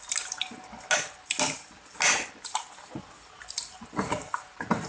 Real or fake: real